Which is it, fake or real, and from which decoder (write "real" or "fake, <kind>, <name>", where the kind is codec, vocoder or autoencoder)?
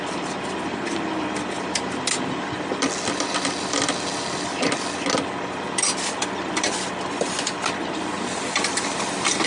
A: real